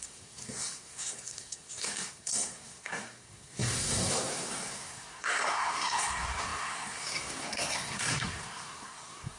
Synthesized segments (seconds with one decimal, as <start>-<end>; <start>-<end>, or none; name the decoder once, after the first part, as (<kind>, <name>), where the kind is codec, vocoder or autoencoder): 0.0-9.4 (codec, SNAC)